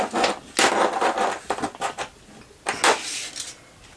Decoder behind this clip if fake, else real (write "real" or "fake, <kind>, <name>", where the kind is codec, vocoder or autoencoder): real